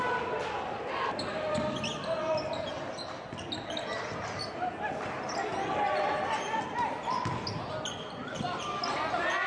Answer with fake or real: real